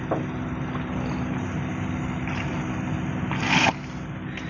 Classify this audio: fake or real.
real